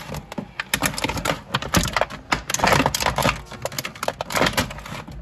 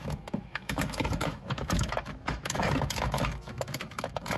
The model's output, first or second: second